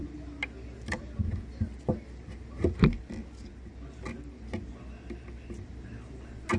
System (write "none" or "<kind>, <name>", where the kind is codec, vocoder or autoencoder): none